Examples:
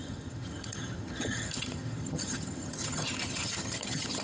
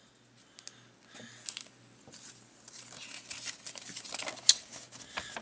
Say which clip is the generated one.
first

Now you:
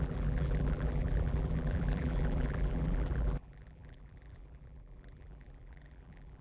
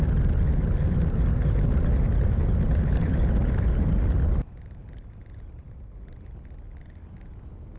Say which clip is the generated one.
first